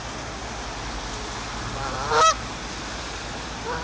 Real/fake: real